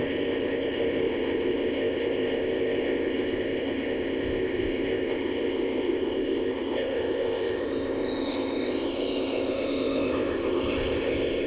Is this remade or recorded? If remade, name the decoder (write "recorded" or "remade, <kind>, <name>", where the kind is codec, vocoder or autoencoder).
remade, codec, ZipCodec